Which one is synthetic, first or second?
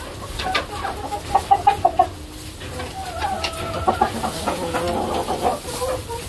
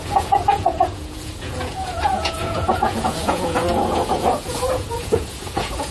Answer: second